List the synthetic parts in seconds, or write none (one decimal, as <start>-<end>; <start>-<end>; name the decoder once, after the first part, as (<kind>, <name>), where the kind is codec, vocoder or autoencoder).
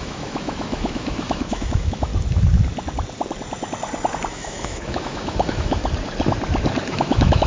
0.0-2.1 (autoencoder, DAC-VAE); 4.3-5.8; 6.9-7.5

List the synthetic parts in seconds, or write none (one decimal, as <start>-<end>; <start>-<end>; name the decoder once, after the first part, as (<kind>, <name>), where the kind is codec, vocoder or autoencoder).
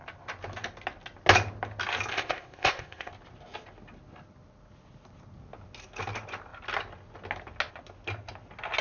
2.1-3.1 (codec, ZipCodec)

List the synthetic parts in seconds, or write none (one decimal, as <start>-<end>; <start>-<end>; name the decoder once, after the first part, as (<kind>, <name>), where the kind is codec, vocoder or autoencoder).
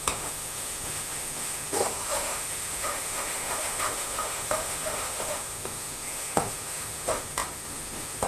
0.0-8.3 (autoencoder, DAC-VAE)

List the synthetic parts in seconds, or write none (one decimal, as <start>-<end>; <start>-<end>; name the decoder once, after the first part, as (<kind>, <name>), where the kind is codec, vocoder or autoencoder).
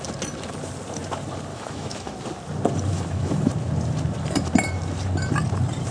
1.5-2.1 (autoencoder, DAC-VAE); 2.9-3.5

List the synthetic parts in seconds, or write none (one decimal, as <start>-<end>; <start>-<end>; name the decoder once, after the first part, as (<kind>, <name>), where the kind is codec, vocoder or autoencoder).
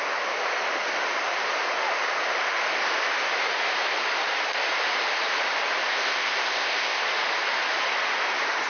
5.9-7.0 (codec, ZipCodec)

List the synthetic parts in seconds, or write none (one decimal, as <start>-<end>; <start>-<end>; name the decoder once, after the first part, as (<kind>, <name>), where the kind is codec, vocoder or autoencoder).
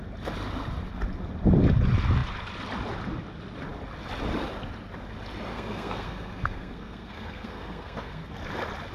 5.5-8.3 (codec, SNAC)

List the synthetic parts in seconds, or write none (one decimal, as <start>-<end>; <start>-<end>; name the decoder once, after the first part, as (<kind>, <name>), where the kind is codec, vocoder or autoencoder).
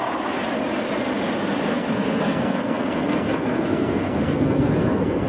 1.7-5.3 (codec, SNAC)